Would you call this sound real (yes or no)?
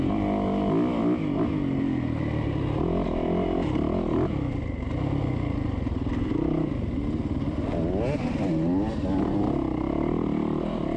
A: yes